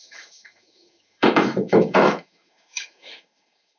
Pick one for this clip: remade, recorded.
remade